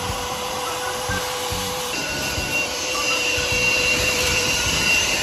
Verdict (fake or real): fake